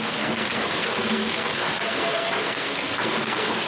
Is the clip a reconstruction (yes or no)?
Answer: yes